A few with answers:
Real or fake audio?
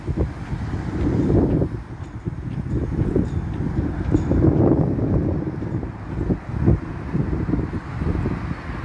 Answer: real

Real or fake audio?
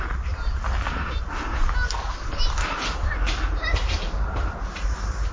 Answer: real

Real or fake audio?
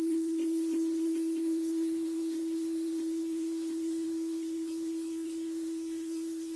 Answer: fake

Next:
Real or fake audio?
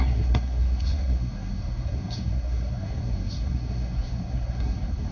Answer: fake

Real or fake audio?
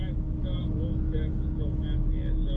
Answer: real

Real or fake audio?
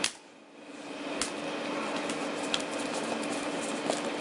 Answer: real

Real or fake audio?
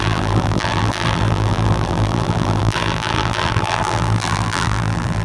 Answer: fake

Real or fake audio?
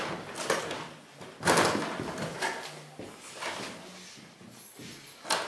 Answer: real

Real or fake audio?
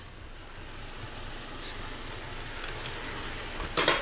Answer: real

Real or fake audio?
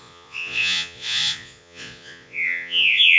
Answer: fake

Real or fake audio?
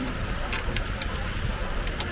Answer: real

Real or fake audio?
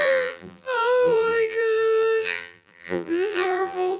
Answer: fake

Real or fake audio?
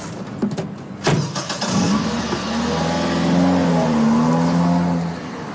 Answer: real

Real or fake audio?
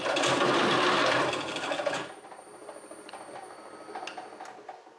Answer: real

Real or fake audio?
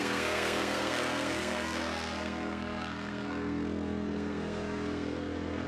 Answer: fake